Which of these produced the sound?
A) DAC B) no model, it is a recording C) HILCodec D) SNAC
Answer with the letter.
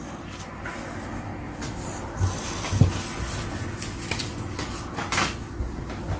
B